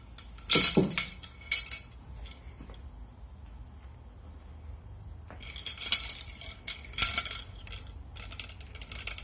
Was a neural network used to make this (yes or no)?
no